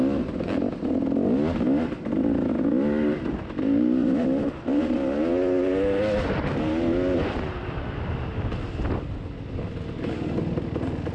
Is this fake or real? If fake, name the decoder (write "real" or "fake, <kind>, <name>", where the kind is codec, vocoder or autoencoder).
real